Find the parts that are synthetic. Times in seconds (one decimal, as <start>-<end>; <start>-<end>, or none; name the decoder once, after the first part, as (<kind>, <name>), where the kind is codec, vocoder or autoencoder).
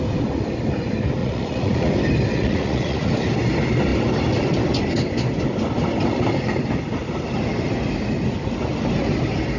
1.2-1.9 (vocoder, Vocos); 2.3-3.1